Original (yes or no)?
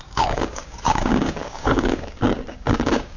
no